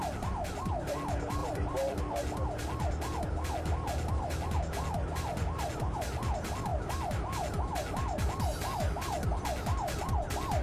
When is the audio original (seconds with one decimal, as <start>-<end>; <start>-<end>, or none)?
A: 0.0-1.4; 2.0-10.6